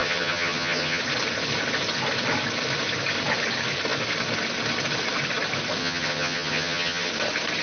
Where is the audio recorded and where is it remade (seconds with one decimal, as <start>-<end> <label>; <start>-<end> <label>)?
0.0-1.0 remade; 1.0-5.8 recorded; 5.8-7.1 remade; 7.1-7.6 recorded